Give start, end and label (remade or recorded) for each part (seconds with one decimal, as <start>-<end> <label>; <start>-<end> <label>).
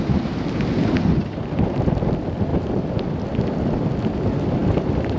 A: 0.0-5.2 recorded